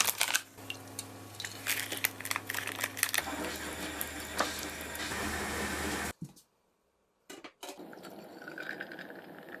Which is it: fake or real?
real